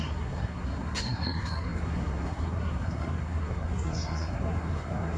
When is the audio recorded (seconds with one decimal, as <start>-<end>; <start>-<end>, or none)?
none